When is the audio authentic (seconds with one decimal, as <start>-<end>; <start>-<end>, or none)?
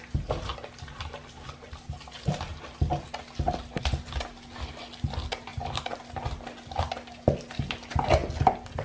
0.0-0.5; 1.6-5.5; 6.0-8.8